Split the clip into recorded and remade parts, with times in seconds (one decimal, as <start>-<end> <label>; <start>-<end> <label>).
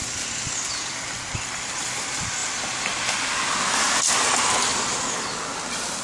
0.0-6.0 recorded